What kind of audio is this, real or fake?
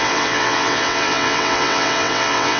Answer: fake